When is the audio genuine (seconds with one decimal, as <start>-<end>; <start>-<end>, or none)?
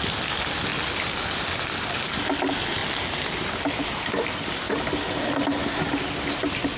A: 0.0-6.8